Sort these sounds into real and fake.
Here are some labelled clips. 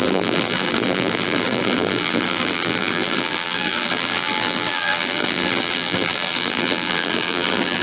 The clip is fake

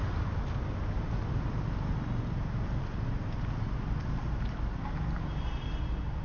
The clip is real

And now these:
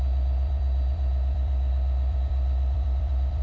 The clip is fake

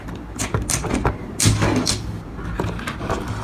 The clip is real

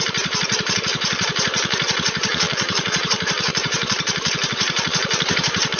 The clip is fake